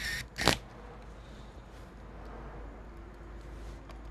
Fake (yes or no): no